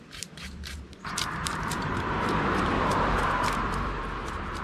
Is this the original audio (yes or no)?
no